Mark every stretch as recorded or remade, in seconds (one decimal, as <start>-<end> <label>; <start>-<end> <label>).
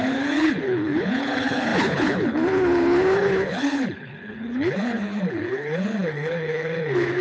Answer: 0.0-7.2 remade